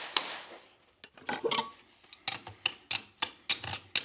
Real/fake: real